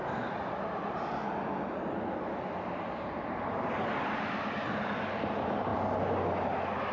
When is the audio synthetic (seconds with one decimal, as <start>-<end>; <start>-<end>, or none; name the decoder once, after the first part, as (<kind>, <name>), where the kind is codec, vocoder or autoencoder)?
none